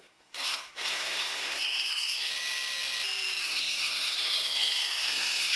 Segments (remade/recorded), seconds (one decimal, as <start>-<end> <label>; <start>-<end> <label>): 0.0-2.3 remade; 2.3-3.4 recorded; 3.4-5.6 remade